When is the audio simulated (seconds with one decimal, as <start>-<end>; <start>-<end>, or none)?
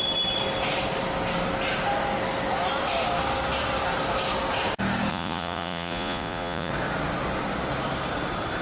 5.1-6.7